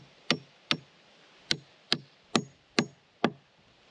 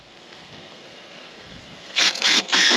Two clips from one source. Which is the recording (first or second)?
first